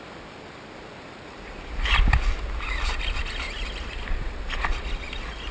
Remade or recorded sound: recorded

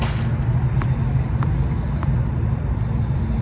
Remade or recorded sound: recorded